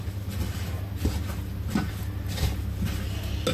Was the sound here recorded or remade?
recorded